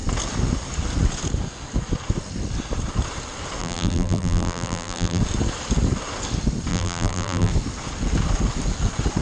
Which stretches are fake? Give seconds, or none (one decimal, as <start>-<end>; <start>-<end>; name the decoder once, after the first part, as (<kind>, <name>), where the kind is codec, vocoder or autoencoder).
3.6-5.2 (vocoder, BigVGAN v2); 6.7-7.5